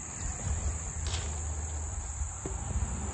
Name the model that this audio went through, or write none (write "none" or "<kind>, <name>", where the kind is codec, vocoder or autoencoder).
none